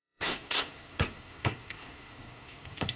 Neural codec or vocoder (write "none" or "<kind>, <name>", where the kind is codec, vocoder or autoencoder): codec, SNAC